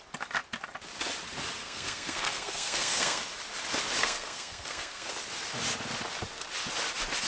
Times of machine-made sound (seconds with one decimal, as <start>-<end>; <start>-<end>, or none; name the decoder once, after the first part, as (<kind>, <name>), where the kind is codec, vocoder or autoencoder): 1.6-3.2 (codec, SNAC); 4.0-5.1

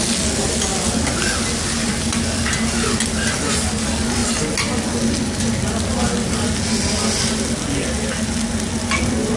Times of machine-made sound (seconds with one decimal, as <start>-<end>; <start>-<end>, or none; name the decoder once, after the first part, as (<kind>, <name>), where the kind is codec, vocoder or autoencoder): none

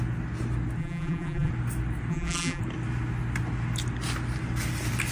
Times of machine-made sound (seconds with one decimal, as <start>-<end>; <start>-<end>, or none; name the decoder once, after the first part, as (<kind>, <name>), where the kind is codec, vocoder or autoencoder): 0.8-1.5 (vocoder, BigVGAN v2); 2.1-2.6

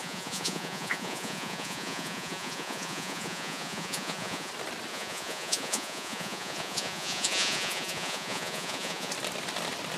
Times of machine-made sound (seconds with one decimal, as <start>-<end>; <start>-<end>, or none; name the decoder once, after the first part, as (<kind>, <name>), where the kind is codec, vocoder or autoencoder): 0.0-4.5 (vocoder, Vocos); 4.9-9.1

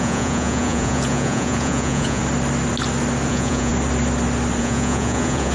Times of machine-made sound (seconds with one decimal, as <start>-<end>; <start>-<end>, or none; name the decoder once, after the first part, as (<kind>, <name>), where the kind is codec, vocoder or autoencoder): 0.0-2.2 (vocoder, Vocos); 3.3-3.7; 4.6-5.5

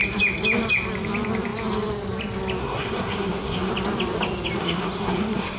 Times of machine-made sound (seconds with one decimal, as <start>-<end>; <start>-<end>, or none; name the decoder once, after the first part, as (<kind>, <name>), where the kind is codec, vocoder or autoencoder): 2.6-3.7 (codec, SNAC); 4.6-5.6

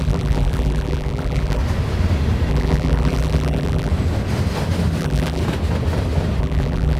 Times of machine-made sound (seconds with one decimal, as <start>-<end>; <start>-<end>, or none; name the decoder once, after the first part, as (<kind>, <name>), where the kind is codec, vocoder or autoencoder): 0.0-1.6 (vocoder, BigVGAN v2); 2.5-3.9; 5.0-5.4; 6.4-7.0

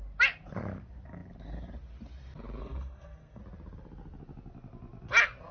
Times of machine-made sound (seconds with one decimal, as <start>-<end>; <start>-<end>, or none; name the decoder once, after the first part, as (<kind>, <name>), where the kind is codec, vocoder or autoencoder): 2.6-3.4 (codec, SNAC)